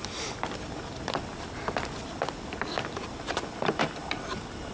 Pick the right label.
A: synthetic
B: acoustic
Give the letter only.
B